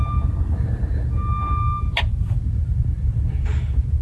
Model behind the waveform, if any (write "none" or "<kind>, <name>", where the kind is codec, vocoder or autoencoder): none